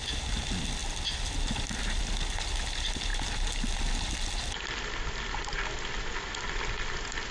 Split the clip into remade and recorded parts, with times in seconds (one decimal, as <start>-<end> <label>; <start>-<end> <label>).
0.0-7.3 recorded